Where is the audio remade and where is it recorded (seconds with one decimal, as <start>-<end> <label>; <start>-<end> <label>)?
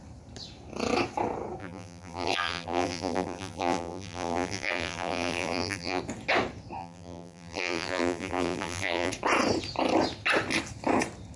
0.0-1.6 recorded; 1.6-6.0 remade; 6.0-6.8 recorded; 6.8-9.1 remade; 9.1-11.4 recorded